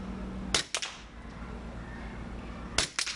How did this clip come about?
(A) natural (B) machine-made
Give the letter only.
A